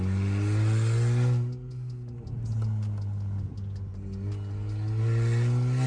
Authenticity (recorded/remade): recorded